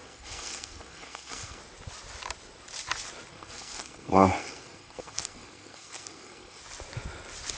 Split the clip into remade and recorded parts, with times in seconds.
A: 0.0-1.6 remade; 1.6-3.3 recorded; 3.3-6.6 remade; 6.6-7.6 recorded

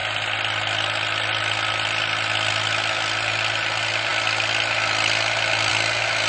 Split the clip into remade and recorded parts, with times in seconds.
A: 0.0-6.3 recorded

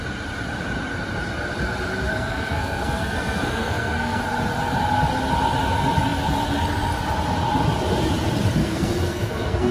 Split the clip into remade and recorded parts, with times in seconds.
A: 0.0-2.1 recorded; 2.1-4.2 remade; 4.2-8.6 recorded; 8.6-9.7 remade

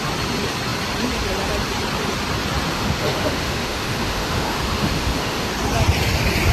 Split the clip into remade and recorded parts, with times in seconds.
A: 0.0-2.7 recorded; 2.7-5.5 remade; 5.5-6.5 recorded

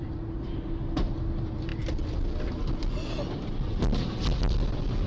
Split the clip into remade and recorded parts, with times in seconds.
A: 0.0-0.4 recorded; 0.4-1.1 remade; 1.1-5.1 recorded

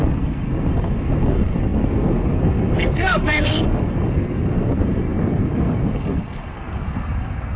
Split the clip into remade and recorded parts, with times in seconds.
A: 0.0-7.6 remade

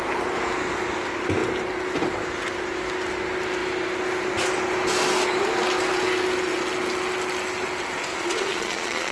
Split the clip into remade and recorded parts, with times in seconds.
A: 0.0-8.1 recorded; 8.1-9.1 remade